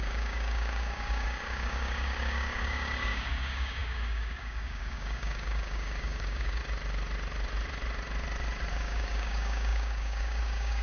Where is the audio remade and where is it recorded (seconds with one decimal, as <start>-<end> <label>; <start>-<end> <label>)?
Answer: 0.0-6.6 remade; 6.6-8.7 recorded; 8.7-10.8 remade